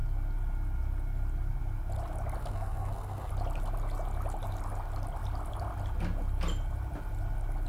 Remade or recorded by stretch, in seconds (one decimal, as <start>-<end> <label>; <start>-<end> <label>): 0.0-2.4 recorded; 2.4-3.3 remade; 3.3-7.7 recorded